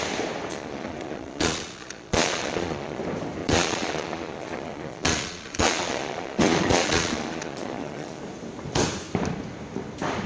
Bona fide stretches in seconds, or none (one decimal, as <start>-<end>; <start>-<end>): 0.0-0.5; 3.0-3.4; 8.2-10.3